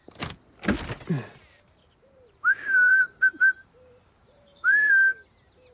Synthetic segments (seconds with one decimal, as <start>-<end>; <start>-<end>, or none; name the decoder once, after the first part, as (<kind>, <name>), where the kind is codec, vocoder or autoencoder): 1.8-4.9 (vocoder, BigVGAN v2)